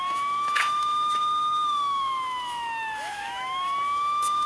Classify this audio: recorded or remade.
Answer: remade